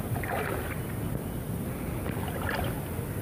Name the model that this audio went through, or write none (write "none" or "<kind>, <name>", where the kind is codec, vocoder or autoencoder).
none